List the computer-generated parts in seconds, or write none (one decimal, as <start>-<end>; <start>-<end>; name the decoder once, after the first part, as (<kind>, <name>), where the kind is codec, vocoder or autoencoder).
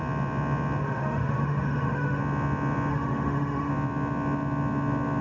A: 0.8-2.2 (autoencoder, DAC-VAE); 2.9-3.7